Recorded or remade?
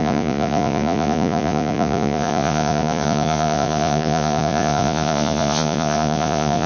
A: remade